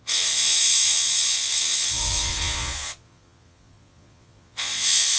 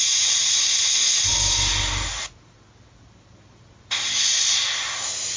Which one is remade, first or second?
first